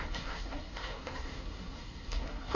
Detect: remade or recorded remade